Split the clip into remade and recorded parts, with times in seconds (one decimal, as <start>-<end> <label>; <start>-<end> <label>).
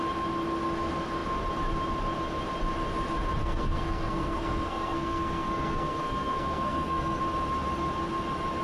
0.0-3.4 recorded; 3.4-7.2 remade; 7.2-8.6 recorded